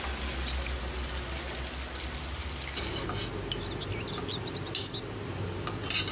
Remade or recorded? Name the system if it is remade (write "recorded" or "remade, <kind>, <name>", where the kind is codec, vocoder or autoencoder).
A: recorded